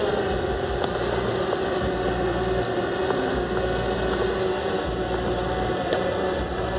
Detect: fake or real real